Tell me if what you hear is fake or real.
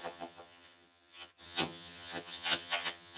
fake